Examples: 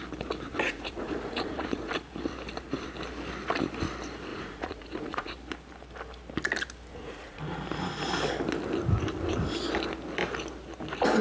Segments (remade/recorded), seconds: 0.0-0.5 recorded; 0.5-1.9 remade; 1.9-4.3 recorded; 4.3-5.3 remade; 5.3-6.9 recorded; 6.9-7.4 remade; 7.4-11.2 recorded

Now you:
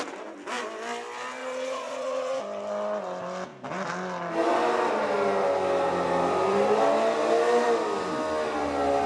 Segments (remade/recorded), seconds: 0.0-1.4 recorded; 1.4-2.4 remade; 2.4-9.1 recorded

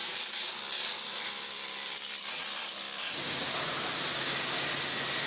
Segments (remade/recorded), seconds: 0.0-5.3 recorded

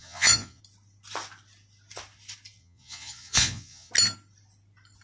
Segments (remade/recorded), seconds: 0.0-0.6 remade; 0.6-2.6 recorded; 2.6-3.9 remade; 3.9-5.0 recorded

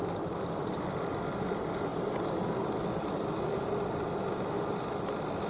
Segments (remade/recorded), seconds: 0.0-5.5 recorded